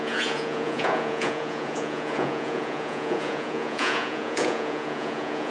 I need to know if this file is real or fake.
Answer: fake